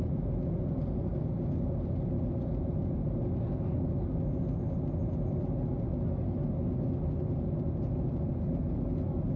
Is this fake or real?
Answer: real